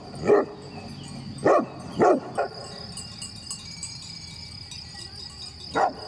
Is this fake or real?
real